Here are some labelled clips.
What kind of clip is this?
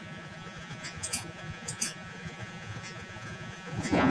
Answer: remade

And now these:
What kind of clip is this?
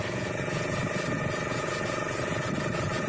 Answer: remade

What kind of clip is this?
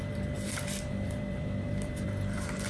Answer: remade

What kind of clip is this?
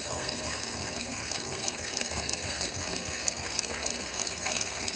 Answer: remade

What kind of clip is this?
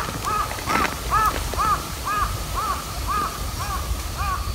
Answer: recorded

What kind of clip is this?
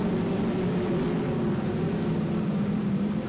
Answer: recorded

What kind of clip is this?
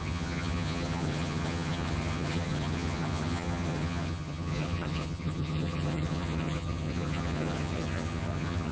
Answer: remade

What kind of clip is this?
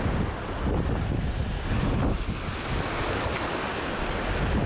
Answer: recorded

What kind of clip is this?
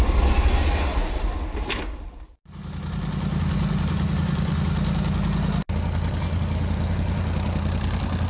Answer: recorded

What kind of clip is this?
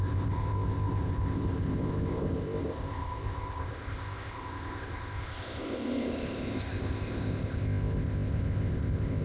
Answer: remade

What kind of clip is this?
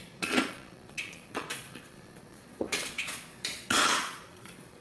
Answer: remade